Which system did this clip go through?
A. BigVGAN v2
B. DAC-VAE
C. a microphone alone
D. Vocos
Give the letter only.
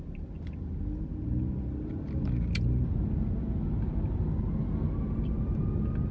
C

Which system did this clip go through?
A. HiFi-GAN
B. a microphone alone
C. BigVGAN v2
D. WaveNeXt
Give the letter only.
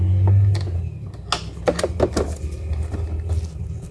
B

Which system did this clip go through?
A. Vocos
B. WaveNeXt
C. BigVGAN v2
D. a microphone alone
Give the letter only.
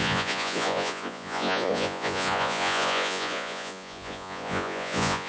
A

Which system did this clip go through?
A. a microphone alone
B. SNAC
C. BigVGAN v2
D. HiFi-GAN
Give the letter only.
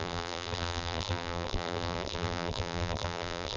C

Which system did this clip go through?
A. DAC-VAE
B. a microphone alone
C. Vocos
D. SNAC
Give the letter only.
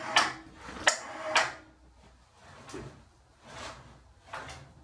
B